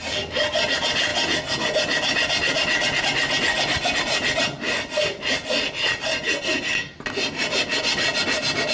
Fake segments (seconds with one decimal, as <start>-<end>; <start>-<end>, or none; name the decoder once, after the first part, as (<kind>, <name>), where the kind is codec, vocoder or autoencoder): none